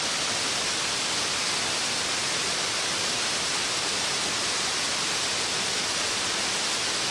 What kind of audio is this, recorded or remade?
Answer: recorded